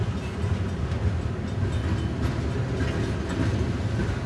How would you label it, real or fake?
real